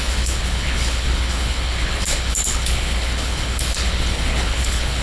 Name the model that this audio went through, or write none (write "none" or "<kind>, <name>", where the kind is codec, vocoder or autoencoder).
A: codec, HILCodec